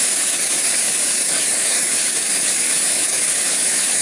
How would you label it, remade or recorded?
remade